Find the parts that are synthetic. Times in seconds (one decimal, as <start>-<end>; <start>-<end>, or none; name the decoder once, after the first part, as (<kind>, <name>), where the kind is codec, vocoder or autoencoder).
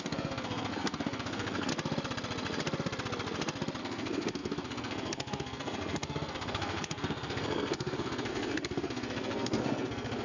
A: 0.0-1.7 (codec, SNAC); 3.8-10.2